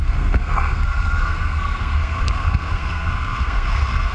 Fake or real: fake